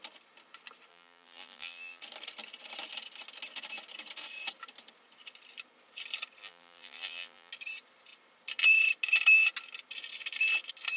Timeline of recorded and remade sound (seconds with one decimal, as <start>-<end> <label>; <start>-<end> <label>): 0.0-0.9 recorded; 0.9-2.0 remade; 2.0-6.4 recorded; 6.4-7.5 remade; 7.5-11.0 recorded

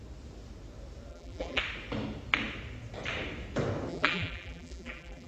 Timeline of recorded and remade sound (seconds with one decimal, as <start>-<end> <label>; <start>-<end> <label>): 0.0-1.1 recorded; 1.1-1.6 remade; 1.6-3.9 recorded; 3.9-5.3 remade

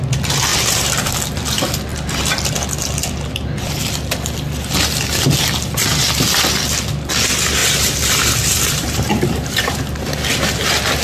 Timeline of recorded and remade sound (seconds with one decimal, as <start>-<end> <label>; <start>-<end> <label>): 0.0-0.5 recorded; 0.5-1.1 remade; 1.1-7.6 recorded; 7.6-9.8 remade; 9.8-11.0 recorded

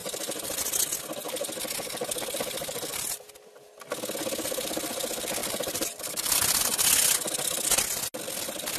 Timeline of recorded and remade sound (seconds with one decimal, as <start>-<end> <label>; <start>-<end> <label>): 0.0-0.5 remade; 0.5-5.4 recorded; 5.4-6.6 remade; 6.6-8.8 recorded

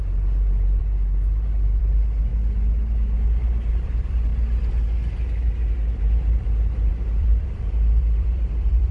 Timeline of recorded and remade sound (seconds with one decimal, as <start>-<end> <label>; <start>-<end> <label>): 0.0-0.8 remade; 0.8-1.8 recorded; 1.8-2.3 remade; 2.3-3.7 recorded; 3.7-4.3 remade; 4.3-6.9 recorded; 6.9-8.9 remade

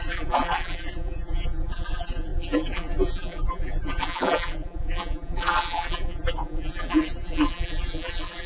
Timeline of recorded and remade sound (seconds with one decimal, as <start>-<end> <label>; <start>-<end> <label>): 0.0-8.5 remade